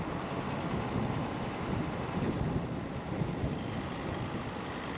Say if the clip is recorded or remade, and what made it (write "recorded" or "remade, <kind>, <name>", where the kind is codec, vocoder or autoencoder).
recorded